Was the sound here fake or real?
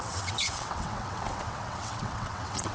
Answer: fake